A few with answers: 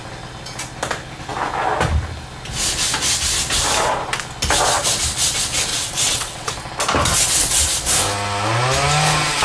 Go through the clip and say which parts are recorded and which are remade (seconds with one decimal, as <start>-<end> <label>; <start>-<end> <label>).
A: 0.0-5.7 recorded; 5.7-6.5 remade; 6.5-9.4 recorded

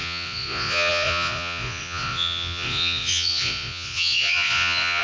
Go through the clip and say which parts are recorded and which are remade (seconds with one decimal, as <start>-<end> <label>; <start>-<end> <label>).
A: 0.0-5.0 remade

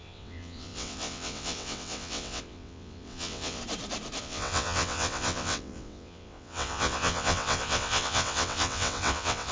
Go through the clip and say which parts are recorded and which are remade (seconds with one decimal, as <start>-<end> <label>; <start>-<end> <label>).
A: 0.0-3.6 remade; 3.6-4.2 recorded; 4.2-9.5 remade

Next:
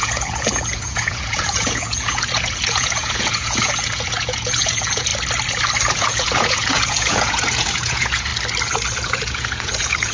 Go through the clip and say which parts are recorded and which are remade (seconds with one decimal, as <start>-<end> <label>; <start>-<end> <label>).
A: 0.0-5.1 remade; 5.1-5.9 recorded; 5.9-8.3 remade; 8.3-9.0 recorded; 9.0-10.1 remade

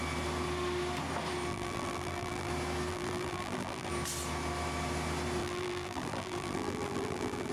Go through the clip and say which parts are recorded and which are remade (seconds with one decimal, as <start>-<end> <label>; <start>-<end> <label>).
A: 0.0-1.5 recorded; 1.5-2.5 remade; 2.5-2.9 recorded; 2.9-3.9 remade; 3.9-5.4 recorded; 5.4-7.5 remade

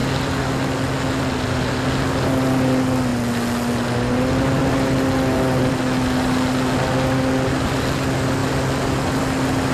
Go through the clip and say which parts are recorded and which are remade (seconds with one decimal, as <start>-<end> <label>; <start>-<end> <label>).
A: 0.0-9.7 recorded

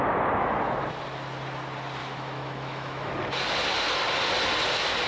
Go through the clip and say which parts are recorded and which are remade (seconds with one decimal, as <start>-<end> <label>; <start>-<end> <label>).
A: 0.0-2.0 recorded; 2.0-3.1 remade; 3.1-5.1 recorded

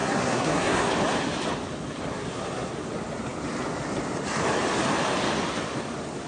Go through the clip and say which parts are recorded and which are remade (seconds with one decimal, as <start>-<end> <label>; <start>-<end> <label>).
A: 0.0-0.9 remade; 0.9-2.1 recorded; 2.1-2.7 remade; 2.7-6.3 recorded